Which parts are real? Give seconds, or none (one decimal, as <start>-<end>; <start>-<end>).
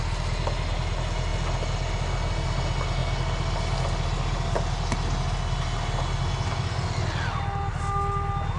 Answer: 0.0-8.6